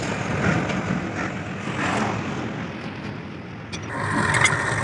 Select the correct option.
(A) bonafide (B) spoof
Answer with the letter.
A